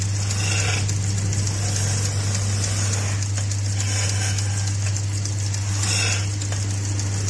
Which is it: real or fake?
real